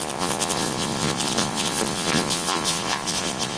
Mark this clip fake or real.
fake